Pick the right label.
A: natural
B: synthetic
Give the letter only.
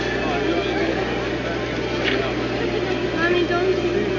A